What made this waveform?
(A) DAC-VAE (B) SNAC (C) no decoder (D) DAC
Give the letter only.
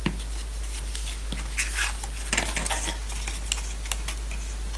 C